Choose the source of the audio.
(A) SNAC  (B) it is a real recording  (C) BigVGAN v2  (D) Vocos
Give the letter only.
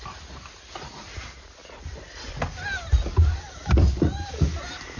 B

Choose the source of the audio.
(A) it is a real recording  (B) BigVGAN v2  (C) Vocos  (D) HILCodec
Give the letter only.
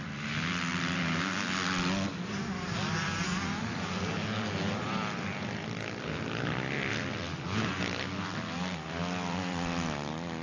A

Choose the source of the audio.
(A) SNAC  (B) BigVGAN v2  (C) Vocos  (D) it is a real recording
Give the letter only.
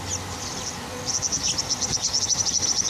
D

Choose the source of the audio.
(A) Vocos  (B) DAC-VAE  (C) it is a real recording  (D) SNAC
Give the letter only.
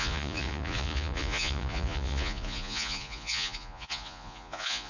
A